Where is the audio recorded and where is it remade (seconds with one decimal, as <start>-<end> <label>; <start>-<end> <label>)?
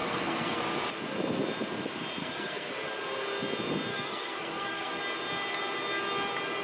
0.0-0.6 remade; 0.6-2.2 recorded; 2.2-2.7 remade; 2.7-3.9 recorded; 3.9-5.0 remade; 5.0-6.6 recorded